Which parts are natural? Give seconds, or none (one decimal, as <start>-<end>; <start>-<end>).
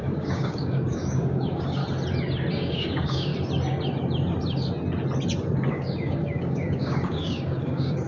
1.8-2.5; 3.3-5.7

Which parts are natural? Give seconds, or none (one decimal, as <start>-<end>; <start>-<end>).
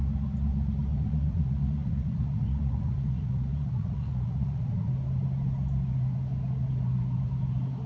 0.0-0.9; 4.9-7.9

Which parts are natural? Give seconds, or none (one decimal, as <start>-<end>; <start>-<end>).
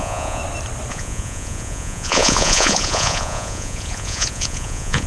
0.4-0.9